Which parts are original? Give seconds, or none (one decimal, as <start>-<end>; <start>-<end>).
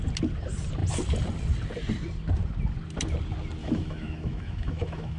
0.0-3.6